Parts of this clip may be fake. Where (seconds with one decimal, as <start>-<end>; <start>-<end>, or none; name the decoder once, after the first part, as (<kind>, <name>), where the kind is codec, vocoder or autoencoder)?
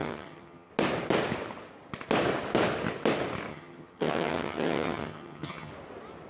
0.0-0.7 (vocoder, HiFi-GAN); 3.5-5.7